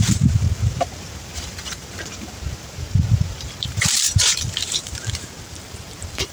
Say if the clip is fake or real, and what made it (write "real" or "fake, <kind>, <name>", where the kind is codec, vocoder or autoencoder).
fake, vocoder, BigVGAN v2